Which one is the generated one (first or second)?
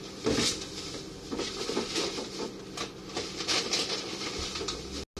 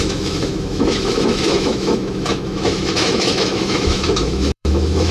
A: second